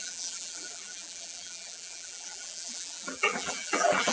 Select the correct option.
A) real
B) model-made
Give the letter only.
B